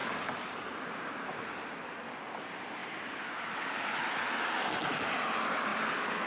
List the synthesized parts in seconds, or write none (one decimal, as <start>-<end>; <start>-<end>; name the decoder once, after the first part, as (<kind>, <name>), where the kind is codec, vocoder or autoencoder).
none